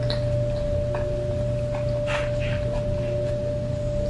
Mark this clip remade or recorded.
recorded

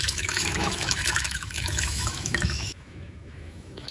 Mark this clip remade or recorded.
remade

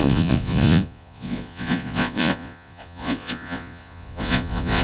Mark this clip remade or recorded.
remade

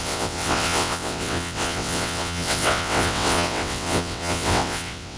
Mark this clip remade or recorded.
remade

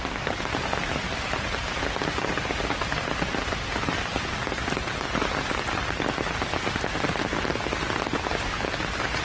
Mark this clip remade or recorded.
recorded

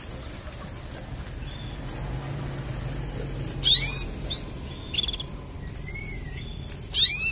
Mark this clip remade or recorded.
recorded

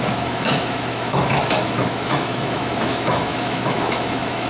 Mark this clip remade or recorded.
remade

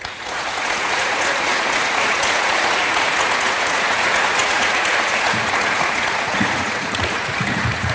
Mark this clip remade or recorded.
remade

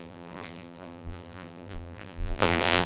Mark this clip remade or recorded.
remade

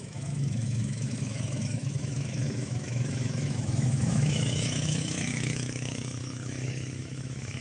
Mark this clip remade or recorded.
remade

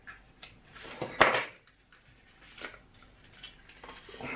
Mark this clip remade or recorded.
recorded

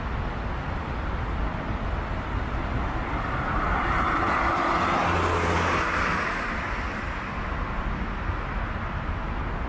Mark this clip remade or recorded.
recorded